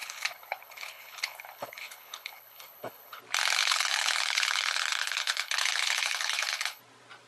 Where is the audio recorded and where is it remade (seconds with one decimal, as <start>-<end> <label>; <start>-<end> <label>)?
0.0-3.2 remade; 3.2-3.6 recorded; 3.6-6.8 remade; 6.8-7.3 recorded